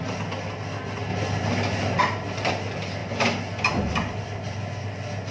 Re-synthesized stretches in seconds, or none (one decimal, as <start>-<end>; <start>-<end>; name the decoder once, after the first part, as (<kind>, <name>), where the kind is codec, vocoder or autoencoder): none